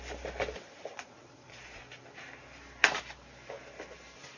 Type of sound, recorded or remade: recorded